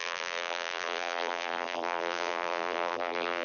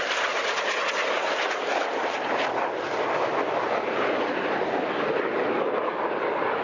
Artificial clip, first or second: first